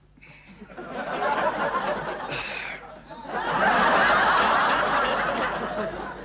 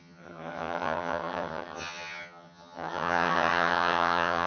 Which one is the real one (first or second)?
first